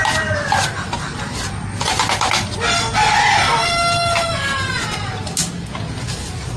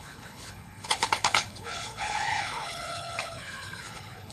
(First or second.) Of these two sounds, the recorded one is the first